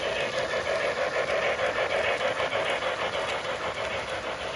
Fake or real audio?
real